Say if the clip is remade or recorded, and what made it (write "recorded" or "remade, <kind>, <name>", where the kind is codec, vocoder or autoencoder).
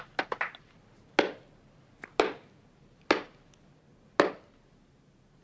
recorded